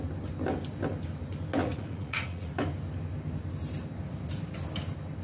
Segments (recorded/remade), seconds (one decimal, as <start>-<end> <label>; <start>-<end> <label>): 0.0-1.6 recorded; 1.6-2.5 remade; 2.5-5.2 recorded